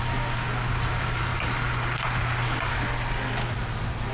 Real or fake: real